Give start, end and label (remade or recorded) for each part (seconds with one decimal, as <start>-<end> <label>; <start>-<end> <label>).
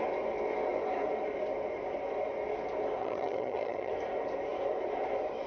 0.0-3.0 recorded; 3.0-3.9 remade; 3.9-5.5 recorded